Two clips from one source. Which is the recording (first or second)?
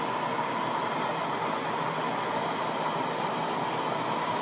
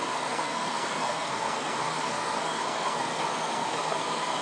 first